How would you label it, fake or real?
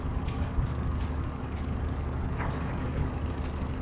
fake